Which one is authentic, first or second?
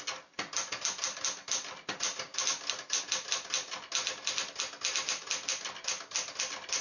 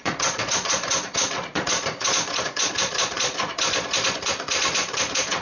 first